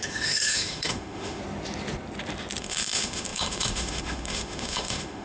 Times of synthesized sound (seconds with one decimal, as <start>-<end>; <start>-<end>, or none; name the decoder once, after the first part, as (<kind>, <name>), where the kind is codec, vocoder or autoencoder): 0.0-1.4 (autoencoder, DAC-VAE); 2.6-5.2